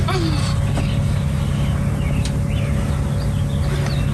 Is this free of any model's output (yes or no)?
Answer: yes